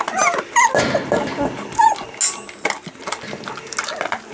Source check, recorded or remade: recorded